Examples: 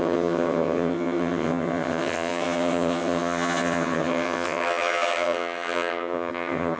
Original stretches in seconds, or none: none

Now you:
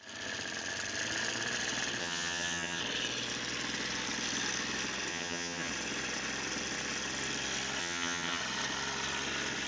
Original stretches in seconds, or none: 0.0-2.0; 2.8-5.1; 5.7-7.8; 8.4-9.7

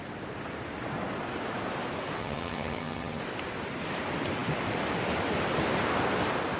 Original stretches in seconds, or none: 0.0-2.2; 3.2-6.6